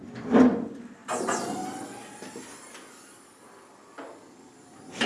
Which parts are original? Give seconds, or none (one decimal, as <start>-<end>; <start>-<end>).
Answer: 0.0-5.1